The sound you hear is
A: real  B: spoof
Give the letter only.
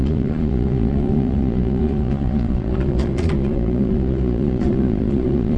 B